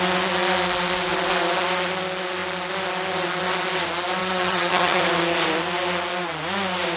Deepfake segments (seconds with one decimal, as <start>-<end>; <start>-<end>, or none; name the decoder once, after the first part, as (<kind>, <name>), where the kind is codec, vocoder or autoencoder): 4.2-5.0 (vocoder, HiFi-GAN)